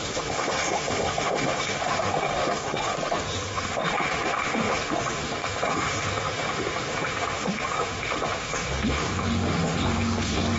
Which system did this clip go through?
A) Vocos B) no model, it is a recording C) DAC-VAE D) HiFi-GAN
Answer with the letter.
C